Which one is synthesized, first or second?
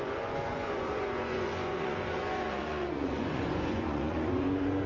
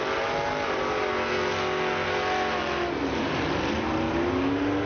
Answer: first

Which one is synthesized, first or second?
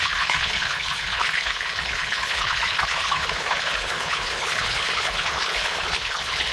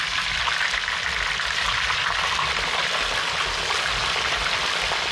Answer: first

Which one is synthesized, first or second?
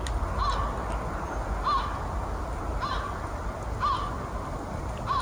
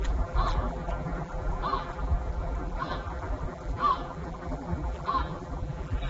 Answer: second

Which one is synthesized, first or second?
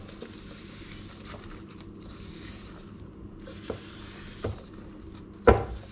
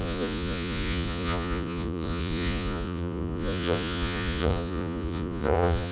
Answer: second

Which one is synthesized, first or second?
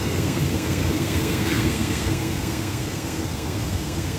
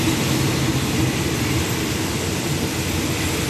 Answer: first